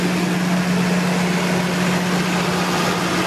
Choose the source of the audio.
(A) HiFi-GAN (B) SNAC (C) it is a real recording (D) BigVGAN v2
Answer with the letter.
C